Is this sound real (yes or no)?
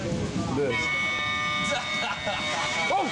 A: yes